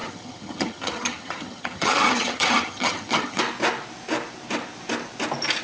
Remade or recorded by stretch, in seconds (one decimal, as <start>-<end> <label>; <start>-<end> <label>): 0.0-3.4 remade; 3.4-5.6 recorded